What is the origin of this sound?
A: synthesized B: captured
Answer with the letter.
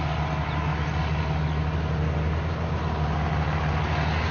B